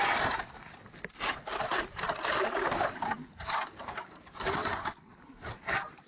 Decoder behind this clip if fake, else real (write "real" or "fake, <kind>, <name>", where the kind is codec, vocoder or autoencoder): fake, vocoder, BigVGAN v2